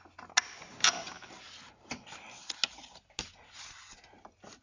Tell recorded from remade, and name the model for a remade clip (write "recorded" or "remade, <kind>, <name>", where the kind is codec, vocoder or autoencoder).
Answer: recorded